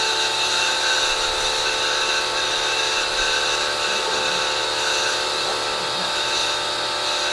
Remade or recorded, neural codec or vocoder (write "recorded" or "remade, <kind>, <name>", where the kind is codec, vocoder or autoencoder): recorded